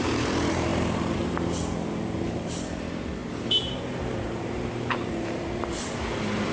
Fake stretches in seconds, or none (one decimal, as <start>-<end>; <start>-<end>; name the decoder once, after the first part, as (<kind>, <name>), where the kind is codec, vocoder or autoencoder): 0.0-6.5 (vocoder, BigVGAN v2)